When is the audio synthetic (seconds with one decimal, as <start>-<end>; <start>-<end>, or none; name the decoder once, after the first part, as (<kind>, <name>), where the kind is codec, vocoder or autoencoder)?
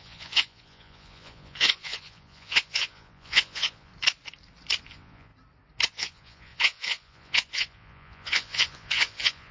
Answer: 0.0-3.9 (vocoder, Vocos); 4.8-5.3; 5.9-9.5